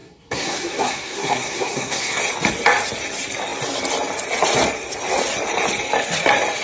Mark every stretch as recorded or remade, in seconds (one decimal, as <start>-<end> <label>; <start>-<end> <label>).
0.0-2.2 remade; 2.2-6.6 recorded